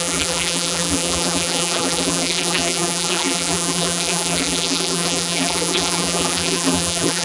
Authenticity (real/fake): fake